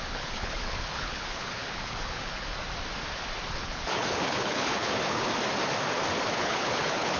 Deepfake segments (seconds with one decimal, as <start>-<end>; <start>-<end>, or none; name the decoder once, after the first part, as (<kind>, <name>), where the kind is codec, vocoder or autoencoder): 0.0-2.5 (codec, HILCodec); 3.5-5.3; 6.4-7.2